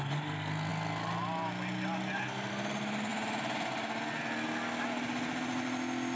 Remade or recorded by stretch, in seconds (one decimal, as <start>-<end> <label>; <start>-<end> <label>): 0.0-6.2 recorded